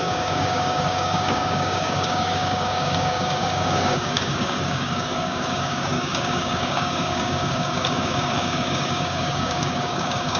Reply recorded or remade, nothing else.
remade